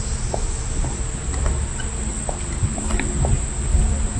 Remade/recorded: recorded